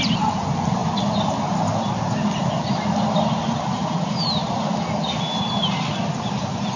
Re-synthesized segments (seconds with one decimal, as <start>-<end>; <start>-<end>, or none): none